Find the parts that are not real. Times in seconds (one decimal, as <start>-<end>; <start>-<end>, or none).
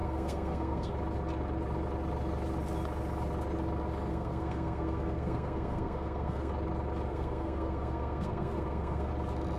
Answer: 0.0-0.9; 4.1-6.5; 7.1-9.1